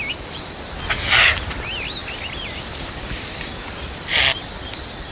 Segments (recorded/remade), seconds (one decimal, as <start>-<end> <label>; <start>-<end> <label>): 0.0-2.0 recorded; 2.0-4.2 remade; 4.2-5.1 recorded